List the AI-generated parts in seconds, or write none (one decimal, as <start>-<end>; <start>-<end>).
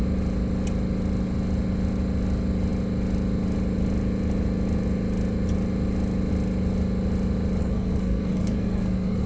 7.6-9.3